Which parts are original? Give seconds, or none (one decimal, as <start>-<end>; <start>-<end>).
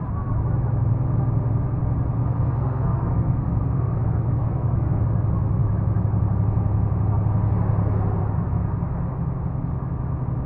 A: 0.0-2.2; 5.0-10.5